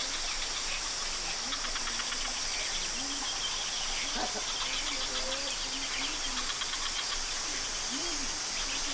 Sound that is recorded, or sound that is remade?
recorded